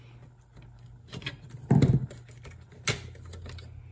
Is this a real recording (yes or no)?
yes